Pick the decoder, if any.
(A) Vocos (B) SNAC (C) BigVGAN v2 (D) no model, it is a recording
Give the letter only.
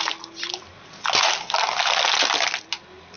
D